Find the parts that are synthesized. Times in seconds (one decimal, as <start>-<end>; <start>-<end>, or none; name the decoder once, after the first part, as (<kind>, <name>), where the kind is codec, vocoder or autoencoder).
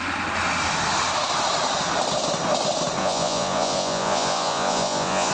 3.0-5.3 (vocoder, Vocos)